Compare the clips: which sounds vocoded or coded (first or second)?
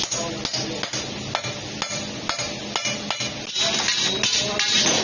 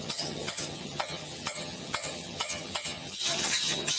second